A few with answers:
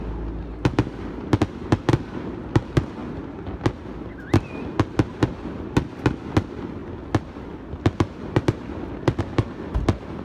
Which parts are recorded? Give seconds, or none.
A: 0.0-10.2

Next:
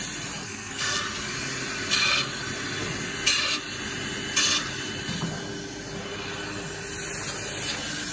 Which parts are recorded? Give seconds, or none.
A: 0.0-0.4; 1.0-8.1

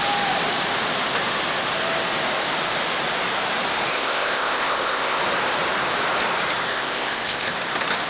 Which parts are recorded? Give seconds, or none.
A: 0.0-3.9; 5.2-6.7; 7.5-8.1

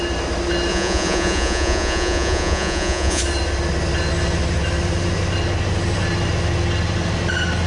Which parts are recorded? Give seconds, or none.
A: 0.0-0.7; 3.2-7.7